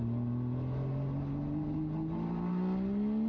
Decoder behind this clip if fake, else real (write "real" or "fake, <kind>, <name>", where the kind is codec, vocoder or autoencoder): real